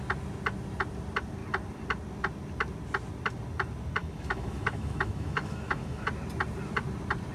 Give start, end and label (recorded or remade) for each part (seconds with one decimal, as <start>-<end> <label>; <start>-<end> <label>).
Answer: 0.0-4.0 recorded; 4.0-6.1 remade; 6.1-7.3 recorded